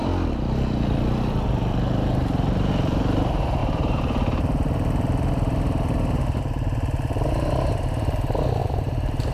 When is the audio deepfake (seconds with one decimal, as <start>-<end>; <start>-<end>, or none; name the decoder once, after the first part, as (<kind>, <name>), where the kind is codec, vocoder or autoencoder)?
3.6-4.4 (vocoder, BigVGAN v2); 8.6-9.3